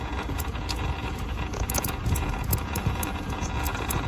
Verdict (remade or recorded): remade